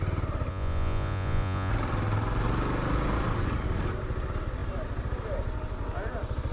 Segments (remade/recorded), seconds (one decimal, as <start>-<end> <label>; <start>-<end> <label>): 0.0-0.5 recorded; 0.5-1.7 remade; 1.7-6.5 recorded

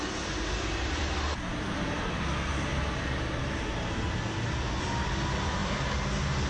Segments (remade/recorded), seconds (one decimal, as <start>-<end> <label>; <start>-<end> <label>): 0.0-2.7 recorded; 2.7-3.4 remade; 3.4-6.5 recorded

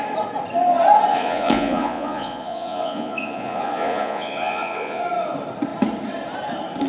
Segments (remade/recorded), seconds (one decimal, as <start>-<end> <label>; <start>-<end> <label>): 0.0-1.1 recorded; 1.1-5.0 remade; 5.0-6.9 recorded

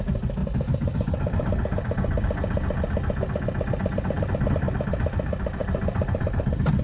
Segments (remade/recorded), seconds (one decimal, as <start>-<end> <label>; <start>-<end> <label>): 0.0-6.8 recorded

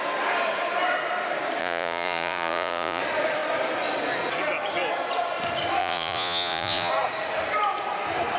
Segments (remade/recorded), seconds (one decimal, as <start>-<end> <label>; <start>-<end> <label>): 0.0-1.6 recorded; 1.6-3.0 remade; 3.0-5.8 recorded; 5.8-6.9 remade; 6.9-8.4 recorded